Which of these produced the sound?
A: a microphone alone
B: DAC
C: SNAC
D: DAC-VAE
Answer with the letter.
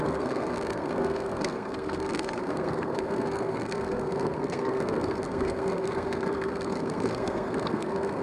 C